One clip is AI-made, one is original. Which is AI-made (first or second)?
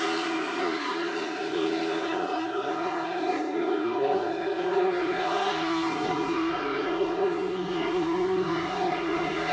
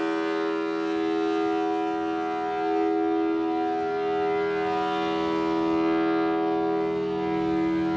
first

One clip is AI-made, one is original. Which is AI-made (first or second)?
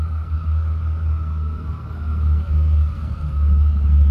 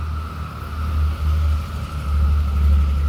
first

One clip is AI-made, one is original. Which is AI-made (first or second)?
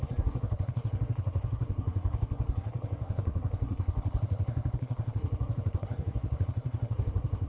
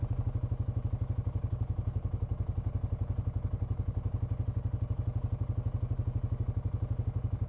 first